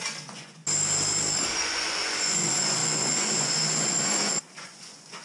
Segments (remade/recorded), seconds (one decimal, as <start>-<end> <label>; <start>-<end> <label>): 0.0-0.6 remade; 0.6-1.6 recorded; 1.6-5.2 remade